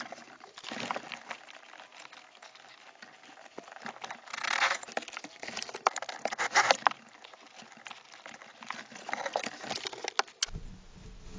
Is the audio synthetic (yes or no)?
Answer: no